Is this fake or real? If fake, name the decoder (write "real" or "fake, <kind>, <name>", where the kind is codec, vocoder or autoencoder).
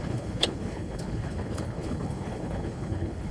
fake, codec, HILCodec